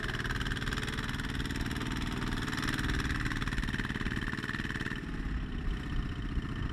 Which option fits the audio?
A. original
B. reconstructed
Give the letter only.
A